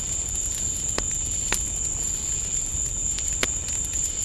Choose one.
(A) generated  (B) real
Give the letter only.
B